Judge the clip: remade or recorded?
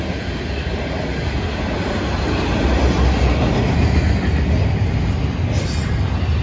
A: recorded